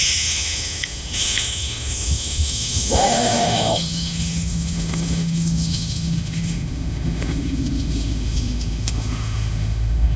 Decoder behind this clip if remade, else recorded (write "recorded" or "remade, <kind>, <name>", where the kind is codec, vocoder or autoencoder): remade, autoencoder, DAC-VAE